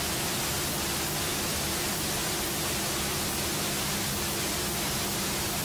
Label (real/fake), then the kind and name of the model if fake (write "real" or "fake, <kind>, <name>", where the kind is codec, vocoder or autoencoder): real